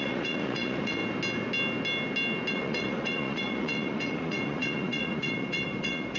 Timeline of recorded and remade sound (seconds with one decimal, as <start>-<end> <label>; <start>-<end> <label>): 0.0-1.0 remade; 1.0-2.5 recorded; 2.5-6.2 remade